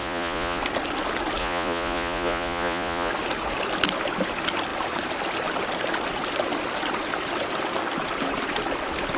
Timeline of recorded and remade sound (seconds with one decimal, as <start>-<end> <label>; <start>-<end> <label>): 0.0-0.6 remade; 0.6-1.4 recorded; 1.4-3.1 remade; 3.1-9.2 recorded